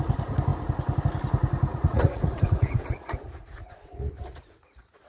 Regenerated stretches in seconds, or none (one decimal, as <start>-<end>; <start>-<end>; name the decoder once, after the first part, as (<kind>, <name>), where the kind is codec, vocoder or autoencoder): 1.7-5.1 (vocoder, Vocos)